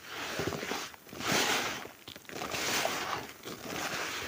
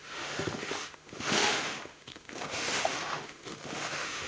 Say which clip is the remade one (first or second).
second